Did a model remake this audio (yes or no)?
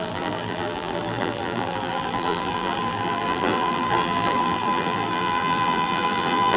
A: yes